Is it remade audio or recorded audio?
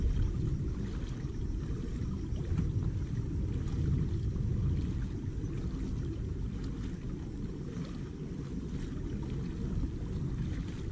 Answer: recorded